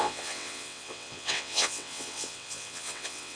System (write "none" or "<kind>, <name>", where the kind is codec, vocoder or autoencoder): vocoder, WaveNeXt